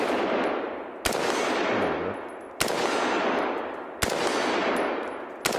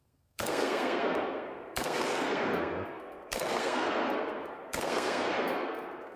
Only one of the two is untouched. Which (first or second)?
first